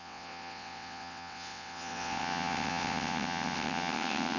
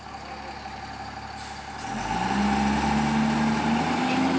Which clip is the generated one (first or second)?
first